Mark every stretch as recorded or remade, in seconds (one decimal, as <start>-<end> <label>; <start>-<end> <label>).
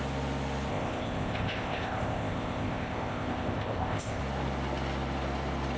0.0-0.7 recorded; 0.7-4.2 remade; 4.2-5.8 recorded